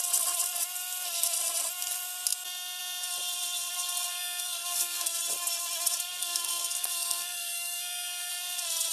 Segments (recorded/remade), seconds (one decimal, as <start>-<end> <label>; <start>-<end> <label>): 0.0-4.1 recorded; 4.1-5.2 remade; 5.2-6.2 recorded; 6.2-8.3 remade; 8.3-8.9 recorded